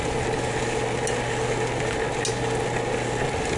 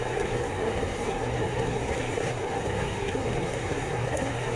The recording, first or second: first